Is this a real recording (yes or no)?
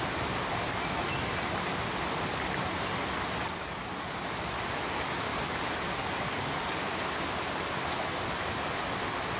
yes